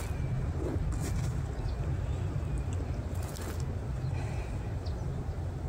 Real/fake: real